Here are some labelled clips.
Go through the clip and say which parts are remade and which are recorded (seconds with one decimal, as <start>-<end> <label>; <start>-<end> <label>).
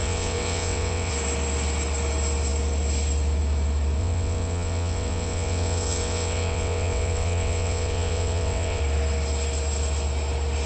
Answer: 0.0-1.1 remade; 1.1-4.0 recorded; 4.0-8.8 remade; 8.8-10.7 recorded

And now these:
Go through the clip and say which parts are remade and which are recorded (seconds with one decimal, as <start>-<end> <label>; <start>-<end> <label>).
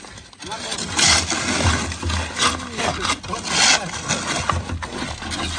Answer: 0.0-5.6 recorded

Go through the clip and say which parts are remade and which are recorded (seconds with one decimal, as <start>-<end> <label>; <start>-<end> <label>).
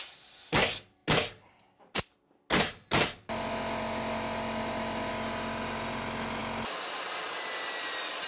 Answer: 0.0-8.3 recorded